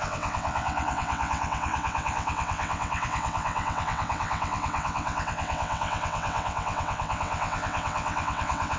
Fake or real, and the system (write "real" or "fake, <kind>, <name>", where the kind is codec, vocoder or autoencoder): fake, vocoder, WaveNeXt